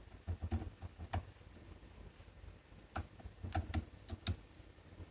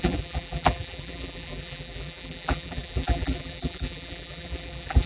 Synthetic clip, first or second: second